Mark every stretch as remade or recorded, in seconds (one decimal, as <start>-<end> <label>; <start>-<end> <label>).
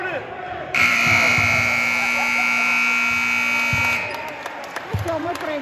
0.0-1.3 remade; 1.3-4.7 recorded; 4.7-5.6 remade